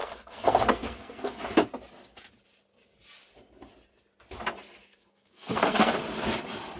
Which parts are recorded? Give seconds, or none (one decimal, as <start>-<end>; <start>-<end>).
1.4-4.8; 5.9-6.8